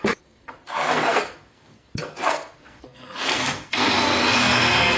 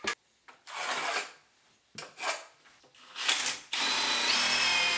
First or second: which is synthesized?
first